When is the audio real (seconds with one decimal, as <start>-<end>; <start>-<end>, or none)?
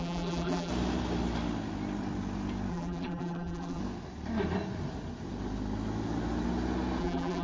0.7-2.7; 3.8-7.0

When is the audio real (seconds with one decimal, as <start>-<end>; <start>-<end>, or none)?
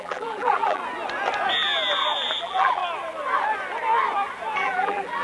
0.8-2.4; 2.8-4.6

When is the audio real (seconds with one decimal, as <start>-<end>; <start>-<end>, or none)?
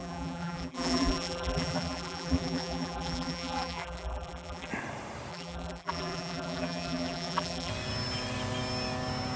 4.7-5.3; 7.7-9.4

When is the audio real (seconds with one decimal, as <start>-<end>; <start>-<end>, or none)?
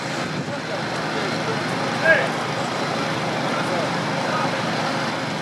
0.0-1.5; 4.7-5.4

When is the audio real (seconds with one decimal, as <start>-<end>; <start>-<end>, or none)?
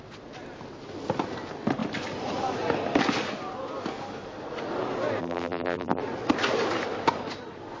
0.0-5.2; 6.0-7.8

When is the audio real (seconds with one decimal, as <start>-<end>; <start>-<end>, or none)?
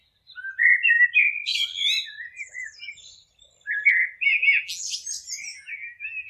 0.0-4.3; 4.8-5.5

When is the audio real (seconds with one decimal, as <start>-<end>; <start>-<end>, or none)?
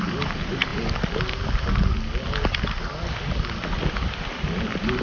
0.7-3.7